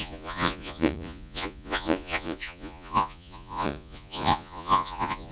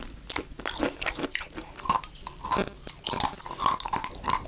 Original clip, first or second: second